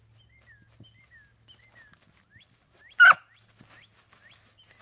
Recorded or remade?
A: recorded